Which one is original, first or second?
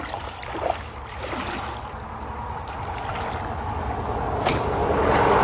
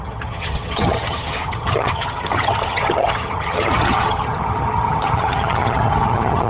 first